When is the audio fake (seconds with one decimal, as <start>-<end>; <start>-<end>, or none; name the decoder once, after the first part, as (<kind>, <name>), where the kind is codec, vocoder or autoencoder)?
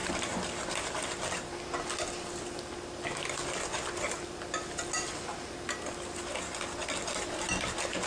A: none